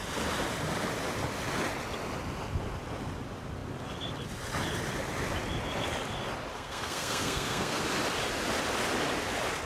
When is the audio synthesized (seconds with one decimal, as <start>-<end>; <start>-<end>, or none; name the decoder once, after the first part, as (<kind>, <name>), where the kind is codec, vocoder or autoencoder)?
6.5-7.8 (codec, SNAC)